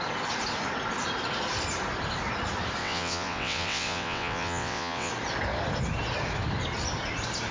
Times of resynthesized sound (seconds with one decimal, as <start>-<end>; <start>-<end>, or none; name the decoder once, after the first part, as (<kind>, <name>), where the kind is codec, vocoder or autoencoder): 2.8-5.1 (vocoder, WaveNeXt)